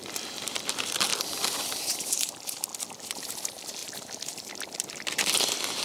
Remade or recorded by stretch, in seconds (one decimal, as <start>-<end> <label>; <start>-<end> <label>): 0.0-1.1 remade; 1.1-3.4 recorded; 3.4-3.8 remade; 3.8-4.5 recorded; 4.5-5.8 remade